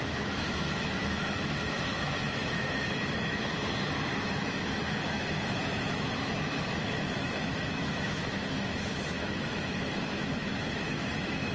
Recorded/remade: remade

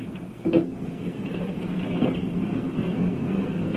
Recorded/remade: remade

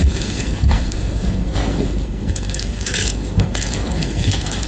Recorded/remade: remade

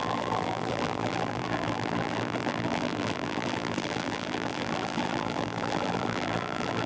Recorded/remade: remade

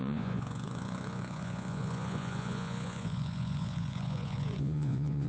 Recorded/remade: remade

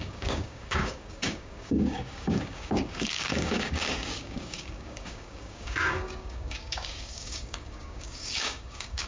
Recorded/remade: remade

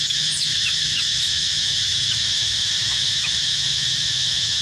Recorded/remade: remade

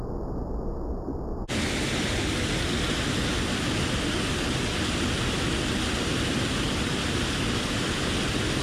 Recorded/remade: recorded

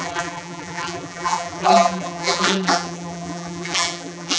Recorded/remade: remade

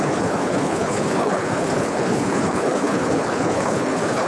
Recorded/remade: remade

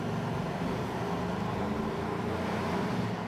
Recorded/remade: recorded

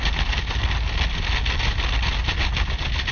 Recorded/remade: recorded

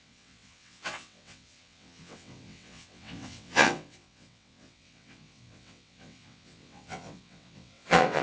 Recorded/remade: remade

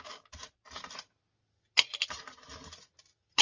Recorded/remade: recorded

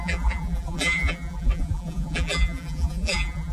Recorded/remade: remade